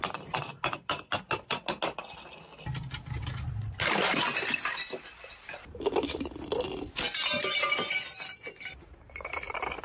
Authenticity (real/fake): real